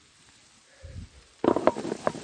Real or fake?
real